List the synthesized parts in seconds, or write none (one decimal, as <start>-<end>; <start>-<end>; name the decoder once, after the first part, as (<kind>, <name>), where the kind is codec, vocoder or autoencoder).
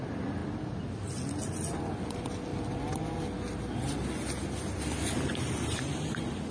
none